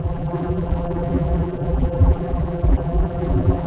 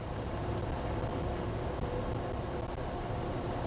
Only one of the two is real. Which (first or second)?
second